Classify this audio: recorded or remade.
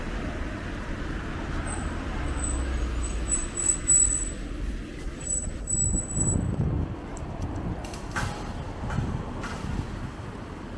recorded